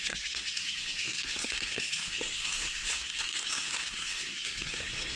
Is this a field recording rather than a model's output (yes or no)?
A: no